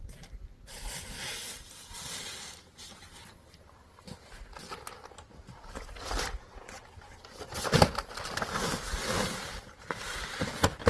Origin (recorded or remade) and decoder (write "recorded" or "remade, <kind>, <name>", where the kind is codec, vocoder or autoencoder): recorded